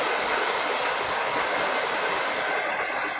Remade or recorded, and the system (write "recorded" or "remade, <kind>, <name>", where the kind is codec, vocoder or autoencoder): recorded